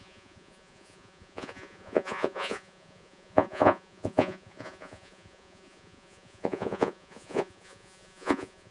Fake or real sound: fake